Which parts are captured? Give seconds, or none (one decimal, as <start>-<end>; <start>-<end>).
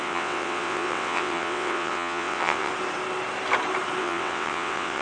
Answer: 2.7-4.0